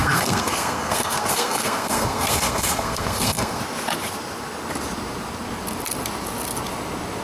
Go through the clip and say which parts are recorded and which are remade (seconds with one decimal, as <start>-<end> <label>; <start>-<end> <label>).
0.0-3.6 remade; 3.6-7.2 recorded